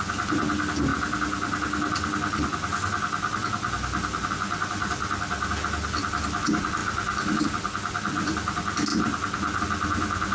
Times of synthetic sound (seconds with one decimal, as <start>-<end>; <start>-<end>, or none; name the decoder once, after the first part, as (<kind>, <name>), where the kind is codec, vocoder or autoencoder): none